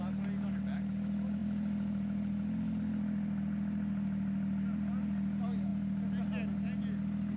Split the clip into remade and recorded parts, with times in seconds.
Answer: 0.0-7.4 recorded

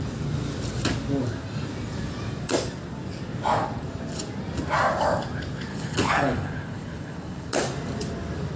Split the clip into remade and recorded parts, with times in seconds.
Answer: 0.0-5.7 recorded; 5.7-7.5 remade; 7.5-8.6 recorded

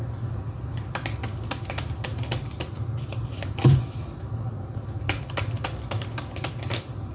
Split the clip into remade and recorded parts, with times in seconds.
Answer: 0.0-7.1 recorded

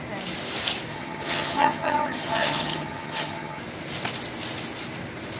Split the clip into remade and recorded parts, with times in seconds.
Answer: 0.0-0.9 recorded; 0.9-3.6 remade; 3.6-5.4 recorded

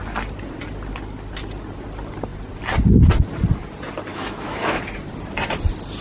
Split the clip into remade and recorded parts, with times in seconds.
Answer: 0.0-4.1 recorded; 4.1-4.8 remade; 4.8-6.0 recorded

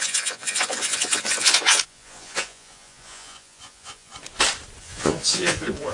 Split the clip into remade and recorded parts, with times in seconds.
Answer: 0.0-4.1 remade; 4.1-4.8 recorded; 4.8-5.9 remade

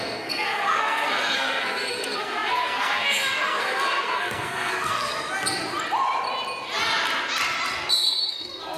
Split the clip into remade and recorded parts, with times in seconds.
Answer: 0.0-5.1 remade; 5.1-7.9 recorded; 7.9-8.8 remade

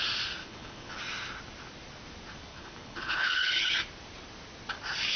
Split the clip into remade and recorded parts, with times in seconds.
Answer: 0.0-0.4 recorded; 0.4-1.0 remade; 1.0-2.5 recorded; 2.5-3.5 remade; 3.5-5.2 recorded